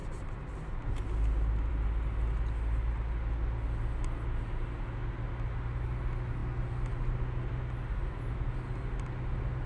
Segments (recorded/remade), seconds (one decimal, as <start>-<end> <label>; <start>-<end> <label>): 0.0-9.7 recorded